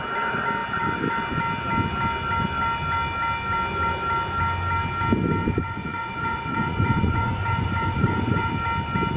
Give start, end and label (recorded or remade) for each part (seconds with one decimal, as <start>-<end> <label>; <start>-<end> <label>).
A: 0.0-5.4 recorded; 5.4-8.5 remade; 8.5-9.2 recorded